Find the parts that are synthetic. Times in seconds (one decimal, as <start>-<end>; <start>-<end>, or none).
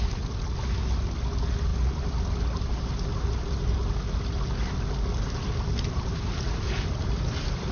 none